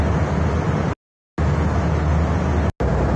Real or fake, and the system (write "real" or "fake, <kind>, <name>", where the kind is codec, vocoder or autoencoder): real